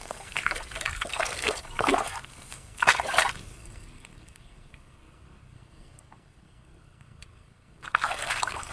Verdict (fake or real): fake